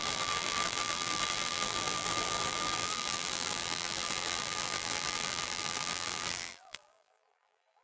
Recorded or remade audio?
remade